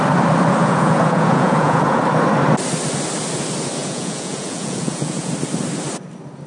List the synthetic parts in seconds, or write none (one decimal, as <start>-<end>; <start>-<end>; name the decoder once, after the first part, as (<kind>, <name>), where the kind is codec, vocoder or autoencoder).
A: 0.6-2.0 (vocoder, Vocos); 3.8-5.3